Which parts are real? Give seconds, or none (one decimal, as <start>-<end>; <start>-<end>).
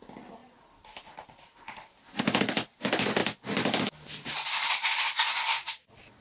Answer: 0.0-6.2